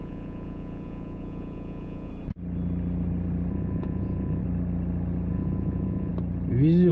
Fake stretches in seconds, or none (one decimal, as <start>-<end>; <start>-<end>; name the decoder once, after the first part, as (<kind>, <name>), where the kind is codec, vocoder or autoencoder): 0.0-2.1 (vocoder, Vocos); 3.5-4.4; 5.3-6.1